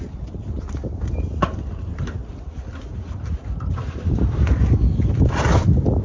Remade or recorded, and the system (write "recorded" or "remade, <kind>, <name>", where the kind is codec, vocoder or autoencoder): recorded